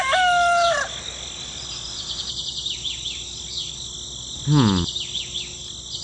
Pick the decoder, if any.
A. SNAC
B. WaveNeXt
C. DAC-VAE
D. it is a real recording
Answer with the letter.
D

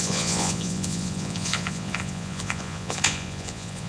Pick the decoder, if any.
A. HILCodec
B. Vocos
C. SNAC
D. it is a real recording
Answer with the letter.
B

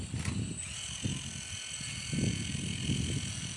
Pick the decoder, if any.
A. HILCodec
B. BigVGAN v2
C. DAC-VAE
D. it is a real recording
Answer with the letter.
D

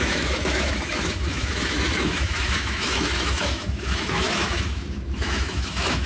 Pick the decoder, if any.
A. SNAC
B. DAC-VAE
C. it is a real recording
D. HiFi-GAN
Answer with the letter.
B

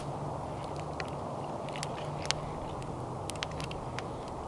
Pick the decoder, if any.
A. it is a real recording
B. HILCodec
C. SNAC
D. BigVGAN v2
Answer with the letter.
A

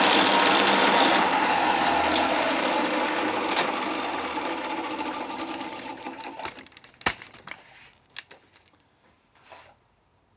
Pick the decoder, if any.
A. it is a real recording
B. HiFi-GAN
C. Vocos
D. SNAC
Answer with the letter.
A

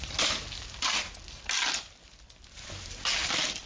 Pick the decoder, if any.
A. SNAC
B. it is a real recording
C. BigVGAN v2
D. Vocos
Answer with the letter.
B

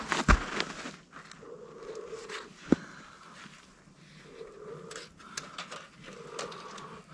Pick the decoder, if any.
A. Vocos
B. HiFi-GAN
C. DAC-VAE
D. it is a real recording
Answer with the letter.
D